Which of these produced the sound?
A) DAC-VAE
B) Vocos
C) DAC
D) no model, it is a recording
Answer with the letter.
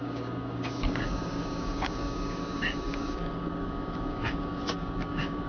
C